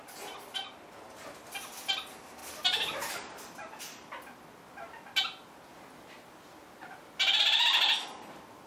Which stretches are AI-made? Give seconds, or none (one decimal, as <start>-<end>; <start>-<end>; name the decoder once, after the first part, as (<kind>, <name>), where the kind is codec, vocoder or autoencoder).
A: none